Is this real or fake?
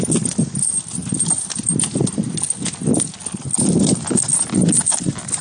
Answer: real